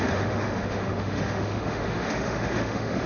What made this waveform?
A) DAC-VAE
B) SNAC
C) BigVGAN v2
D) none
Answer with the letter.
A